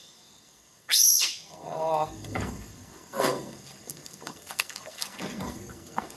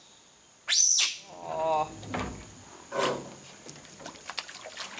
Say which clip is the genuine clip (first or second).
second